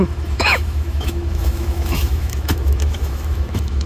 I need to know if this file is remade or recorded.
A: remade